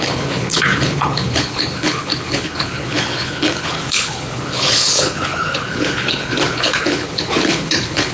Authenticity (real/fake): fake